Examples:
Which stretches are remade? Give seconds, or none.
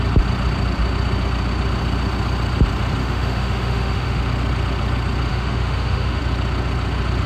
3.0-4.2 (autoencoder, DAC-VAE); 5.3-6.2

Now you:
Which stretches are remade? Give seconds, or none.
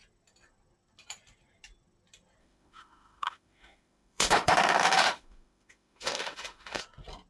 2.4-6.8 (autoencoder, DAC-VAE)